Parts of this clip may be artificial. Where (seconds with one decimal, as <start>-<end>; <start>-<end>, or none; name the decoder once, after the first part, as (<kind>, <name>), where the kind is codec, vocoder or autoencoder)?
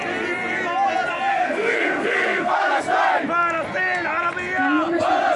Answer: 1.3-2.8 (codec, SNAC)